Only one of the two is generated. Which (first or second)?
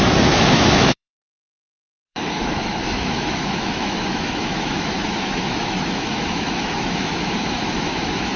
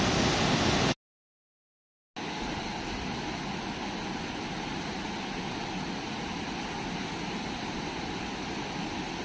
first